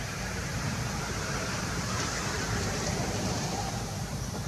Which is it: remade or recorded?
remade